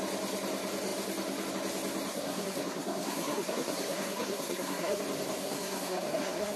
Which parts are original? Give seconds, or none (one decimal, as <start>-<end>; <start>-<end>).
0.0-2.1; 5.0-5.4